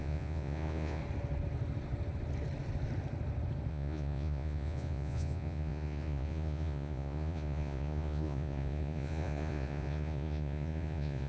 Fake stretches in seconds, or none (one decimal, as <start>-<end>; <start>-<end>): 0.0-1.0; 3.7-11.3